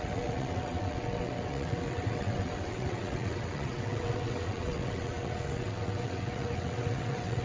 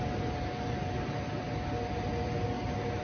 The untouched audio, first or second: second